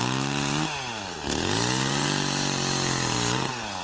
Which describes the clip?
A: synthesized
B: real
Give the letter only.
B